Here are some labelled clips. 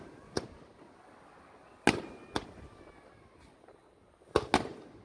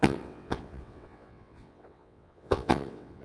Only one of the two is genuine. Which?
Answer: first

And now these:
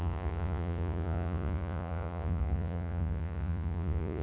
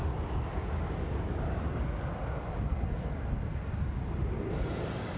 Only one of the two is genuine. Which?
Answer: second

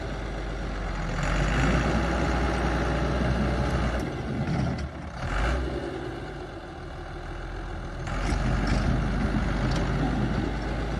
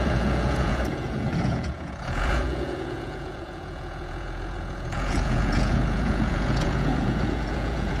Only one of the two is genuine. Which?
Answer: first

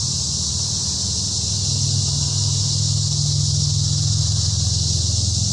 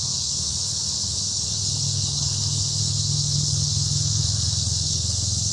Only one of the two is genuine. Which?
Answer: first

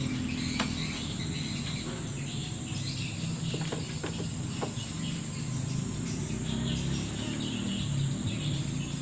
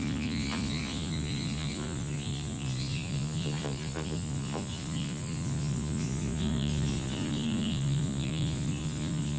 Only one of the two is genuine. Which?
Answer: first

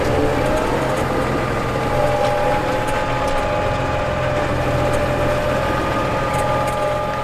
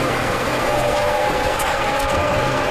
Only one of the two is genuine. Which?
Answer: first